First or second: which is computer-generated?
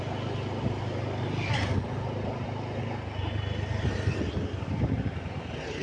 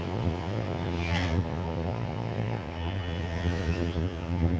second